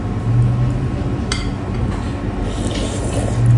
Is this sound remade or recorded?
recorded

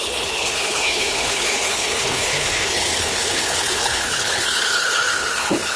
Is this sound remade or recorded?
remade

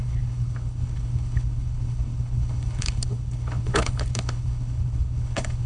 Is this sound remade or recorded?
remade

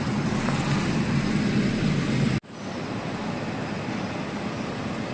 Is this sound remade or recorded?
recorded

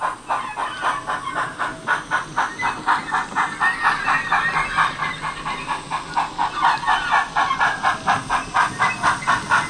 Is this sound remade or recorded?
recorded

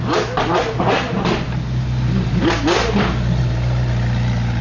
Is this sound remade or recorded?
recorded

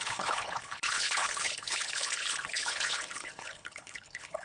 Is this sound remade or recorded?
remade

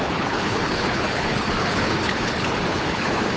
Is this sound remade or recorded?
remade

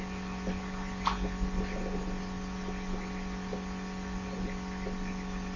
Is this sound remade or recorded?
recorded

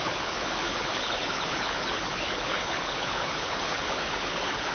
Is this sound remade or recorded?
remade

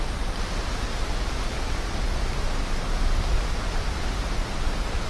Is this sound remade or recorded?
recorded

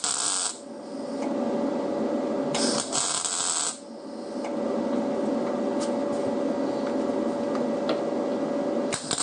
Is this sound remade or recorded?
recorded